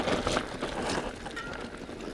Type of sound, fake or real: real